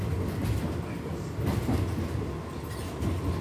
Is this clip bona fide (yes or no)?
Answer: yes